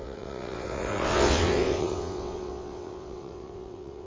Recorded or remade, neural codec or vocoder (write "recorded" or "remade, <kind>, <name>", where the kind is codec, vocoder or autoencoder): remade, vocoder, WaveNeXt